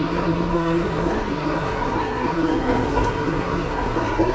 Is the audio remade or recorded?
remade